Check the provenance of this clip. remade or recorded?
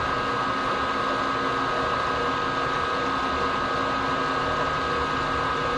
recorded